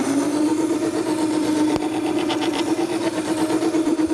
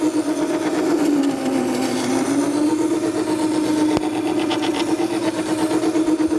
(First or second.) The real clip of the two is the second